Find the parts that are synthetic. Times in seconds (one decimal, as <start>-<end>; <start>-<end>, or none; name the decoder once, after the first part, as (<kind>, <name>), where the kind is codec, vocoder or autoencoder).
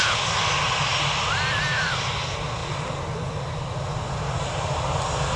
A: none